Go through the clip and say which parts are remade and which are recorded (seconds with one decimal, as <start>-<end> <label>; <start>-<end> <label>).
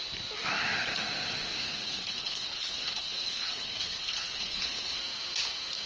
0.0-1.5 recorded; 1.5-5.0 remade; 5.0-5.9 recorded